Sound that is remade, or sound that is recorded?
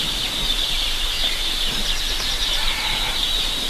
remade